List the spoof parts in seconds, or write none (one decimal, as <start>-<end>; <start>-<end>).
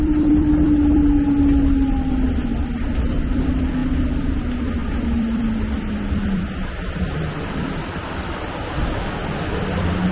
0.0-1.0; 3.3-10.1